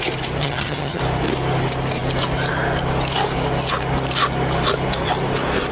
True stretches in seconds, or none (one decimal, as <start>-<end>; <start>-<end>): 0.0-0.4; 1.0-5.7